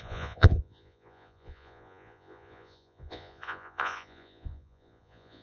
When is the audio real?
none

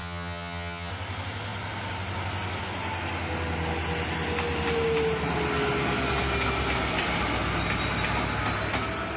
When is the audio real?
0.9-9.2

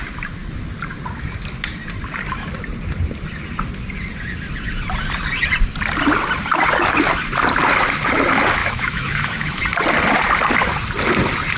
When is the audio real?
0.0-8.6; 9.6-11.6

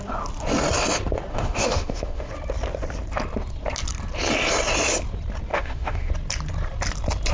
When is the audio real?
0.0-1.3; 2.3-5.5; 6.1-7.3

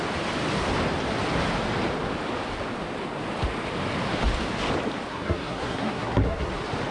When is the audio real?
0.0-5.1; 6.5-6.9